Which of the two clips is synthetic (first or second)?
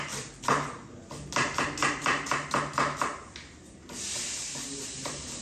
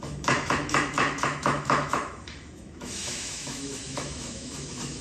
second